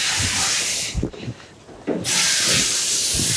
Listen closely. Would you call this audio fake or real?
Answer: fake